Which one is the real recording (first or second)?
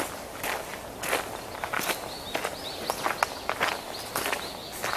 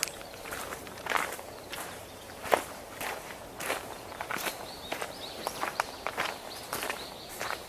first